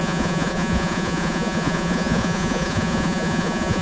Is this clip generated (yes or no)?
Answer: yes